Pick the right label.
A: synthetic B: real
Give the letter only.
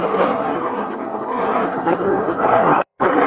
A